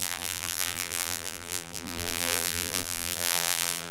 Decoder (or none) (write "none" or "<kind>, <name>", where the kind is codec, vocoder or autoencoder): vocoder, BigVGAN v2